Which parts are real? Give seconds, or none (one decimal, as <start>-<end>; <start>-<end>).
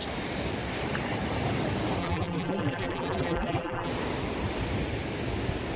0.0-2.0; 3.9-5.8